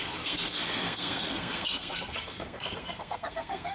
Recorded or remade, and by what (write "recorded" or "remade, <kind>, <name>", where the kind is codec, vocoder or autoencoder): remade, codec, SNAC